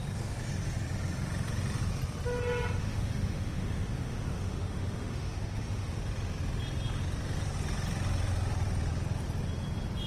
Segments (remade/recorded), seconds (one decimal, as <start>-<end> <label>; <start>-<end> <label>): 0.0-2.8 recorded; 2.8-5.9 remade; 5.9-10.1 recorded